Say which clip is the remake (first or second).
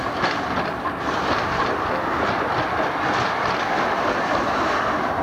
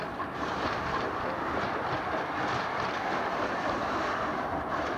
second